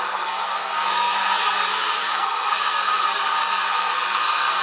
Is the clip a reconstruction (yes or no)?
yes